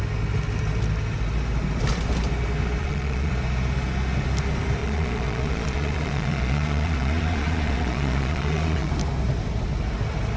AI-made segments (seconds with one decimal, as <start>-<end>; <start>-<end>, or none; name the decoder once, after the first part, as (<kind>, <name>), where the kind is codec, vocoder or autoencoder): 2.8-3.3 (vocoder, Vocos); 4.8-8.9